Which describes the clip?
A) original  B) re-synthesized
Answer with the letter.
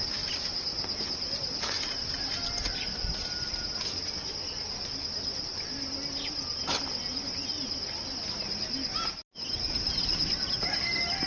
A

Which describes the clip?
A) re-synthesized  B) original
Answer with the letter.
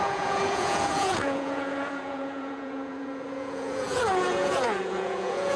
A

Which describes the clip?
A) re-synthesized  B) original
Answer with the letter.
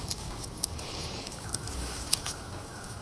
A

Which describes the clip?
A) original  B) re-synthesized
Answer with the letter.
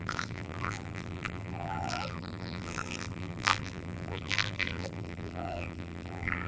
B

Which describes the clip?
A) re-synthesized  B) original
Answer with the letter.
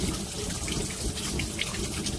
B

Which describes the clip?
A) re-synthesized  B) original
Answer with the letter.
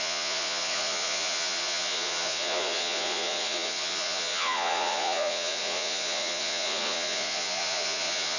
A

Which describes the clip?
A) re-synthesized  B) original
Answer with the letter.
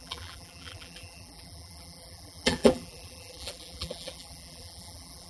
A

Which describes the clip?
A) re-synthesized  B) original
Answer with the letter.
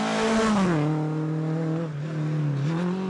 B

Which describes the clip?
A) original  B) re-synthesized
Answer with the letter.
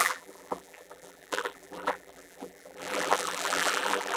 B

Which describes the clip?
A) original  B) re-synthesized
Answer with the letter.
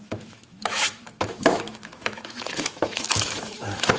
B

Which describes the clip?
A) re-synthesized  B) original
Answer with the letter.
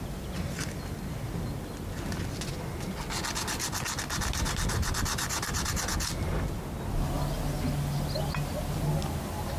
B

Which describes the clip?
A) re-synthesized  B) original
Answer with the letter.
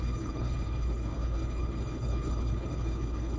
A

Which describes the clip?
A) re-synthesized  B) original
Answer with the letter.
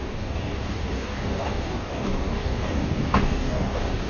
A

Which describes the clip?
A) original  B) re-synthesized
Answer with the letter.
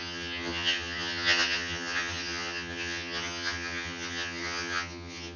B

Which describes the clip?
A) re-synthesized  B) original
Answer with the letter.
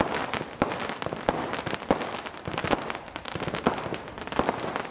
B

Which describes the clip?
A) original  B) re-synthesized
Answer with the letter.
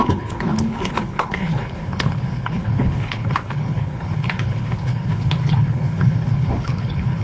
B